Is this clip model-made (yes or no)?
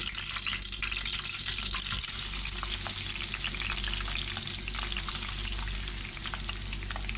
no